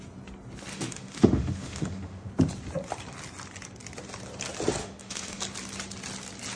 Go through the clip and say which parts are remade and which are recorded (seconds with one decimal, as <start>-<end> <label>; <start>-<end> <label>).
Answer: 0.0-0.7 recorded; 0.7-2.3 remade; 2.3-4.8 recorded; 4.8-5.4 remade; 5.4-6.6 recorded